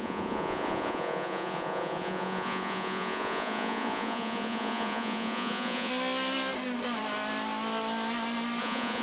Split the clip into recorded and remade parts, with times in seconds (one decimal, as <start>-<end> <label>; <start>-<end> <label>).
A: 0.0-5.9 remade; 5.9-8.6 recorded; 8.6-9.0 remade